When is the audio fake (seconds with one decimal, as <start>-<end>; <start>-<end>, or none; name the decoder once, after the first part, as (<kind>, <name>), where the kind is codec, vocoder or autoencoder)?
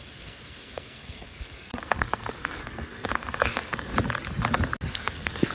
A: 0.0-3.9 (codec, SNAC); 4.9-5.5